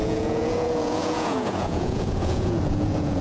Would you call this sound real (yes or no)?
no